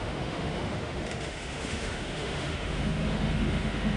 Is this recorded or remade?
remade